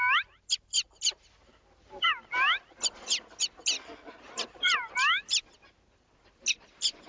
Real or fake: real